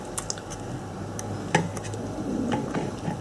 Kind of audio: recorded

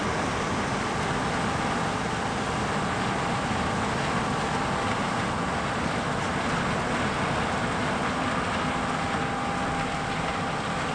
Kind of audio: recorded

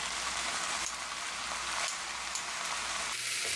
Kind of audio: recorded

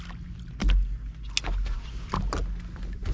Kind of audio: recorded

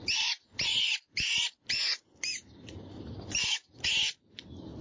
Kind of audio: recorded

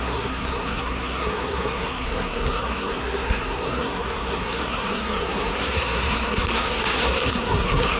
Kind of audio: remade